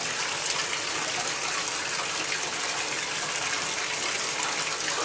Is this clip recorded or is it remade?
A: recorded